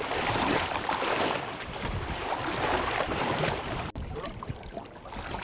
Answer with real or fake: real